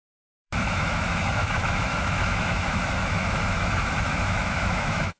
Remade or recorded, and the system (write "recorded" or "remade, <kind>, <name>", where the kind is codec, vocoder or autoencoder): remade, autoencoder, DAC-VAE